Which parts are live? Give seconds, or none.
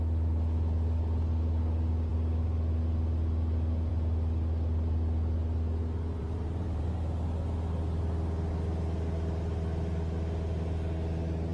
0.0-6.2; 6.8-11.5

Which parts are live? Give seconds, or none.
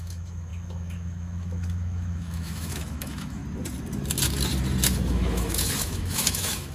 3.4-5.1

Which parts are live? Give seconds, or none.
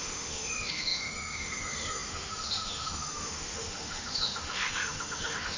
none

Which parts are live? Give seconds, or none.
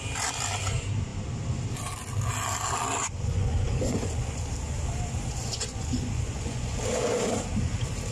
0.0-3.0; 4.4-5.3; 6.8-8.1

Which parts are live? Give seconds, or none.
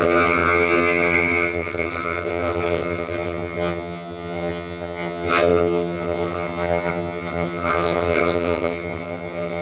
none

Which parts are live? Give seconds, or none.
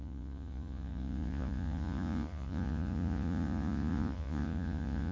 none